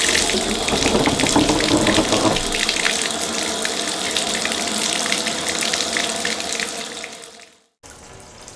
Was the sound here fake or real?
real